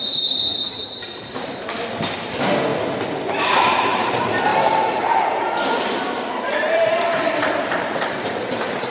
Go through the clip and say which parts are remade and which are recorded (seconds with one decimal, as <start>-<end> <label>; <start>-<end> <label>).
0.0-2.7 remade; 2.7-3.3 recorded; 3.3-8.9 remade

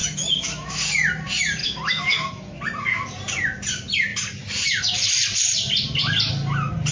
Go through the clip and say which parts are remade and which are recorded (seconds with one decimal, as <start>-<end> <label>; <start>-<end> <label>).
0.0-0.8 remade; 0.8-1.6 recorded; 1.6-2.6 remade; 2.6-6.9 recorded

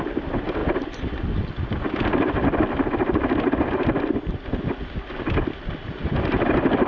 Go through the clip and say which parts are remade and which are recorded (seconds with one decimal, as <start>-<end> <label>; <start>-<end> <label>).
0.0-6.9 recorded

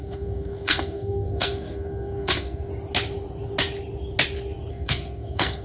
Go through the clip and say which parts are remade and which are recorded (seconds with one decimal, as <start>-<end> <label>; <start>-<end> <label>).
0.0-2.7 remade; 2.7-4.7 recorded; 4.7-5.6 remade